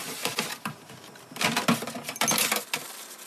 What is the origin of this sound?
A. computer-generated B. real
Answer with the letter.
B